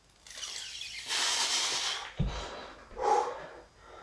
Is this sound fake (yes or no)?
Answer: no